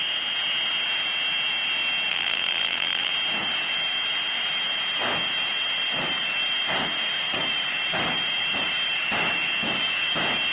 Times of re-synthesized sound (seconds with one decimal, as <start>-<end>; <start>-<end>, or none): 2.1-3.1